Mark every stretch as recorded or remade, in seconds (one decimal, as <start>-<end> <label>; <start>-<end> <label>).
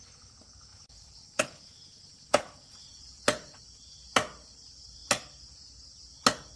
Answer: 0.0-0.7 recorded; 0.7-3.6 remade; 3.6-6.6 recorded